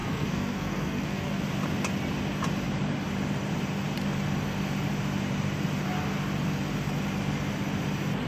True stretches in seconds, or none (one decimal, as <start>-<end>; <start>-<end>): 1.4-8.3